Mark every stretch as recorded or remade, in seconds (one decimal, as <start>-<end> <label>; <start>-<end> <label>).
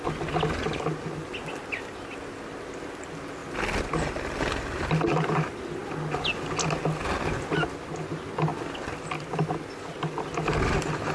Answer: 0.0-11.1 recorded